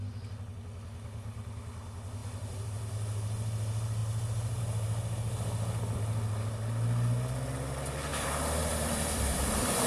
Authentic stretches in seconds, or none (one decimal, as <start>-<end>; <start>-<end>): 0.0-2.2; 2.9-8.1